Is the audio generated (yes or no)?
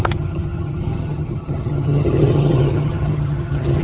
yes